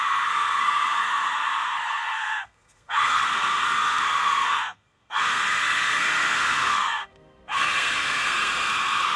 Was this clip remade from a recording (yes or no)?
yes